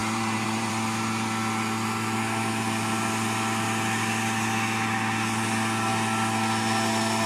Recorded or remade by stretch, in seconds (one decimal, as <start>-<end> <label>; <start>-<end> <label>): 0.0-0.7 remade; 0.7-7.3 recorded